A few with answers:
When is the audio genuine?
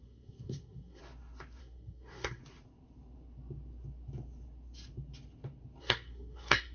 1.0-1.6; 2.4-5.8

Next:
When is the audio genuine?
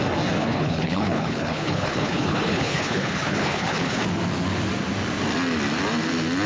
0.0-0.4; 4.0-6.5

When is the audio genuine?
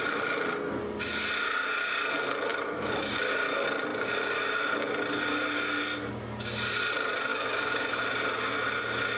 0.0-2.5; 3.1-7.3; 8.0-9.2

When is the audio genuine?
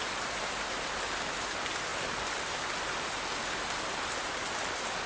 0.0-5.1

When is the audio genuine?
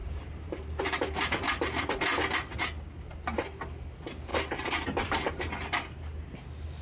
0.8-4.3; 5.7-6.8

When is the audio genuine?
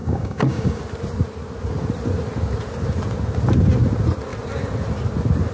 0.8-5.5